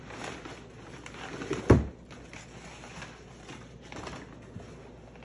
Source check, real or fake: real